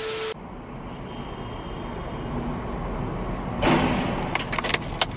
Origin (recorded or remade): recorded